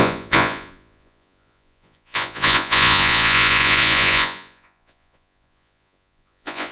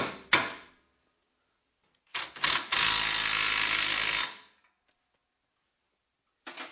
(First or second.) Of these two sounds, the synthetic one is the first